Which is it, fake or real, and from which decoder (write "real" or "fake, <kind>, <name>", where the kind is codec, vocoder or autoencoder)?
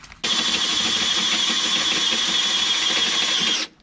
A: real